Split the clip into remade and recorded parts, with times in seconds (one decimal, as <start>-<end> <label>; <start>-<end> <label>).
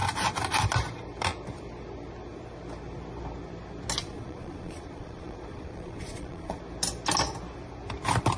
0.0-4.0 recorded; 4.0-6.6 remade; 6.6-8.4 recorded